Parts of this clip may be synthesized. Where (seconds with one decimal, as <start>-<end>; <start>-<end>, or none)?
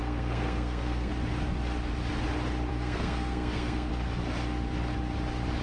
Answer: 0.0-1.1; 2.7-3.9